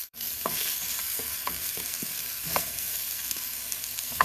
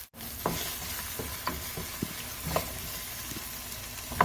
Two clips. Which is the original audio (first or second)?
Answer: second